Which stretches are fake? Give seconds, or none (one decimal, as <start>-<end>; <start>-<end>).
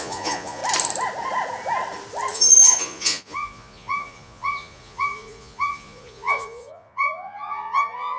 0.0-0.6; 2.3-8.2